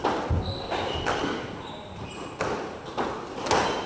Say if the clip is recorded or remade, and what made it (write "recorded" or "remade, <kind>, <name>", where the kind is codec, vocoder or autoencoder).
recorded